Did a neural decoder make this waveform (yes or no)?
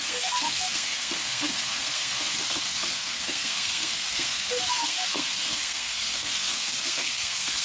yes